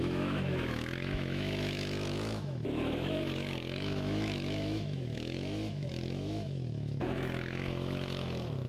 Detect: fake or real fake